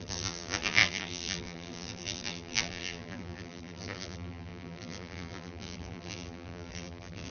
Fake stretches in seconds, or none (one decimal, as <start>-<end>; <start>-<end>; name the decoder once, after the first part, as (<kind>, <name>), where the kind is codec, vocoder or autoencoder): 0.0-7.3 (vocoder, BigVGAN v2)